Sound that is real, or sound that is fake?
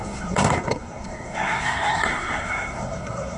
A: fake